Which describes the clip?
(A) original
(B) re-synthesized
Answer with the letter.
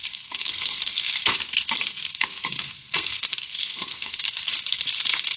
B